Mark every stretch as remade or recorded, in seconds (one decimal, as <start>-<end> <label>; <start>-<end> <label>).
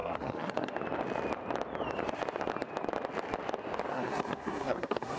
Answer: 0.0-0.7 remade; 0.7-3.9 recorded; 3.9-5.2 remade